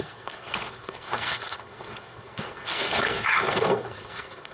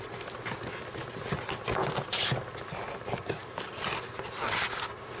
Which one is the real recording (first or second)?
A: second